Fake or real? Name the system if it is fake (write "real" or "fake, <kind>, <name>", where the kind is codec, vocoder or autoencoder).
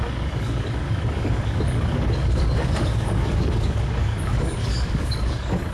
fake, codec, DAC